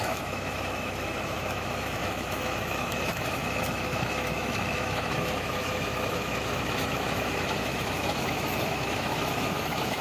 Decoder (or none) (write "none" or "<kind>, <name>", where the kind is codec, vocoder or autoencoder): autoencoder, DAC-VAE